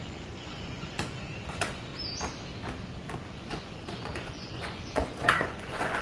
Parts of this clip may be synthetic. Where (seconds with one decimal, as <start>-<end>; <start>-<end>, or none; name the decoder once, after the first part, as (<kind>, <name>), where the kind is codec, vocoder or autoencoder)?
0.0-1.9 (vocoder, Vocos); 3.3-6.0